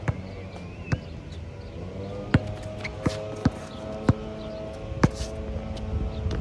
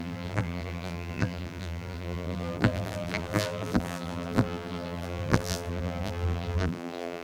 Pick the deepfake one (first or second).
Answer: second